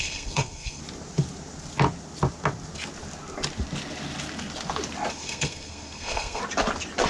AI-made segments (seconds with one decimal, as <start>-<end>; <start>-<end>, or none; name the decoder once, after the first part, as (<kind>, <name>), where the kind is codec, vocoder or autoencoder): 0.0-0.8 (codec, SNAC); 5.1-6.4